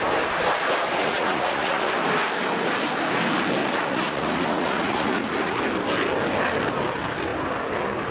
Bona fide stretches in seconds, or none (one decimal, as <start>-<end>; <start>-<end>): 0.0-1.0; 1.9-3.6; 5.6-8.1